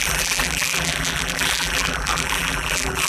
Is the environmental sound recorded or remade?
remade